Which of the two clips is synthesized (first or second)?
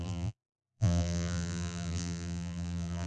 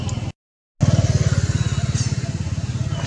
first